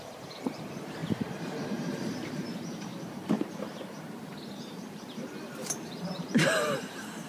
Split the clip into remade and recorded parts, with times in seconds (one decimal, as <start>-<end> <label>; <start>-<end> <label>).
0.0-7.3 remade

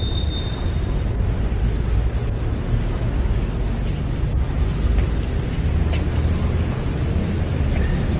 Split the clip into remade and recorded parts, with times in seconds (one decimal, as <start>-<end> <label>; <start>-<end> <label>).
0.0-8.2 recorded

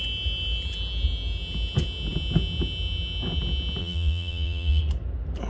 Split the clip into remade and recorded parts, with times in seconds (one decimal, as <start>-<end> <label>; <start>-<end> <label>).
0.0-3.8 recorded; 3.8-4.8 remade; 4.8-5.5 recorded

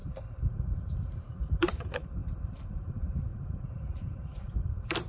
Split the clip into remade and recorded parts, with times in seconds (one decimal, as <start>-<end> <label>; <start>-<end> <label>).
0.0-0.9 recorded; 0.9-5.1 remade